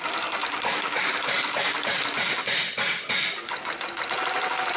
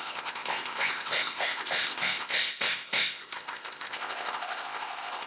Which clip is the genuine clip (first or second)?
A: first